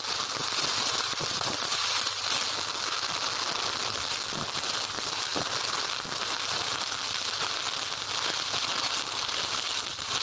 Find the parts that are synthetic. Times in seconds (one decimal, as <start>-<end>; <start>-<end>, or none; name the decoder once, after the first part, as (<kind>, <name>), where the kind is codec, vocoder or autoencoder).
none